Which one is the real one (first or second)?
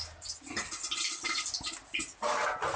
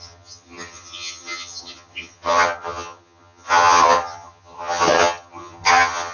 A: first